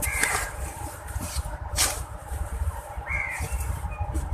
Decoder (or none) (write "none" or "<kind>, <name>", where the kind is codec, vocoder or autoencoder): vocoder, BigVGAN v2